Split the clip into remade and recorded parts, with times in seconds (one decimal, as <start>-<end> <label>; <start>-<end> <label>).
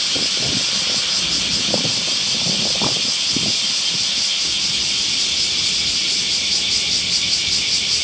0.0-8.0 recorded